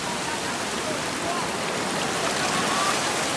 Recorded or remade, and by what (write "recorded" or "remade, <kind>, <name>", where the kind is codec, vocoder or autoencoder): recorded